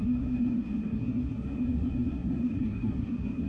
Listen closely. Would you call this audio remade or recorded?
remade